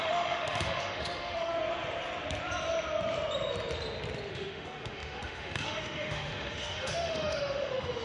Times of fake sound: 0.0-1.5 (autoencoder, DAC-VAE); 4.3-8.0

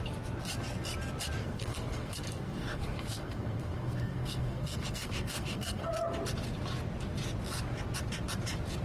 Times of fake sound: 1.4-5.9 (codec, SNAC)

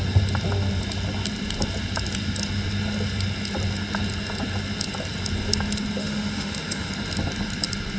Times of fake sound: 6.0-6.9 (autoencoder, DAC-VAE)

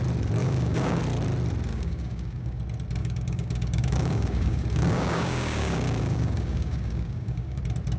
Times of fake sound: 0.4-1.0 (codec, DAC); 1.7-2.6; 3.0-7.6

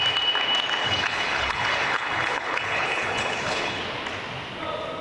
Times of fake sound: 0.8-3.8 (codec, HILCodec)

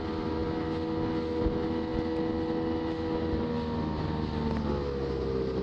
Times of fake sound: none

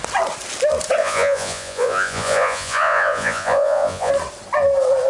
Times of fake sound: 1.0-4.1 (vocoder, Vocos)